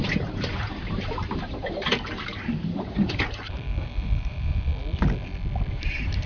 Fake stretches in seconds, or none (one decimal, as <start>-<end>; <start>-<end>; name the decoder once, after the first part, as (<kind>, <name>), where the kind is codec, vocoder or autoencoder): 0.0-4.7 (vocoder, BigVGAN v2); 5.7-6.3